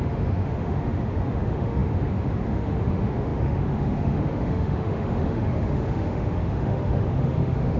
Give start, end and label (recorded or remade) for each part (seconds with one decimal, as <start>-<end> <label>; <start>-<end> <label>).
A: 0.0-7.8 remade